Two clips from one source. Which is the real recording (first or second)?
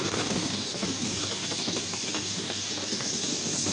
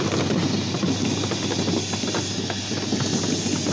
second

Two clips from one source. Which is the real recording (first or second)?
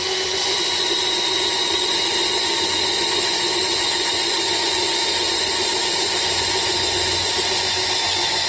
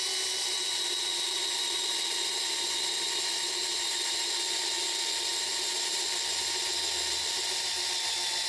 second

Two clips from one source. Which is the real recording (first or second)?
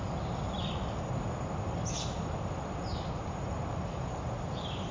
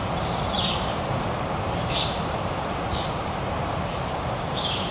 first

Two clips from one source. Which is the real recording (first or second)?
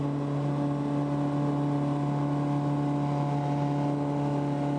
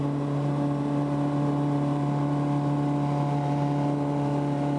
first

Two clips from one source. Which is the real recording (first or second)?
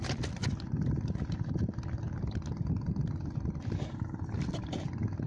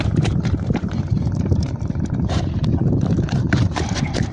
first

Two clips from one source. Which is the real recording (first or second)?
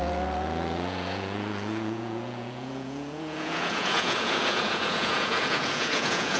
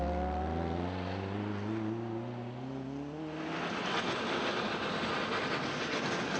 second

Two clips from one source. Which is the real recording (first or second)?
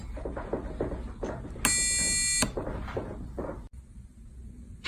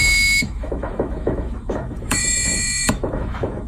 first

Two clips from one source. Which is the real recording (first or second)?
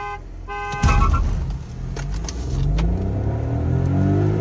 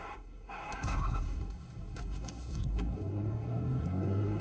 first